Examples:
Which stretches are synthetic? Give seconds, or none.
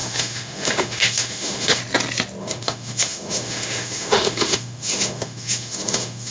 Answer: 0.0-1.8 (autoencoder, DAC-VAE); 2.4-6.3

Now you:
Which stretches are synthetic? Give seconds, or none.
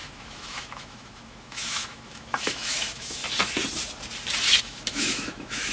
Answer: 0.0-3.2 (autoencoder, DAC-VAE); 4.6-5.7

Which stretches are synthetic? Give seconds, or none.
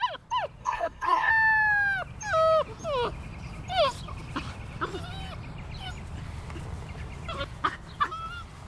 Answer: 0.6-1.3 (codec, SNAC)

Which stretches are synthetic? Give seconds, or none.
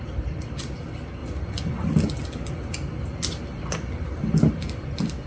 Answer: none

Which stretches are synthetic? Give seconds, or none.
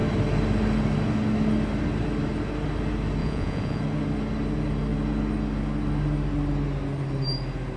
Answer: 3.2-3.8 (vocoder, Vocos)